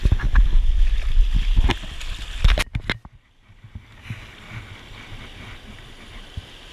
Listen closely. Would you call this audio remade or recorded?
recorded